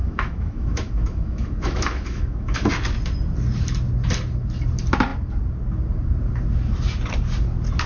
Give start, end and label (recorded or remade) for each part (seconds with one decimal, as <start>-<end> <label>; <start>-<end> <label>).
0.0-2.7 remade; 2.7-7.9 recorded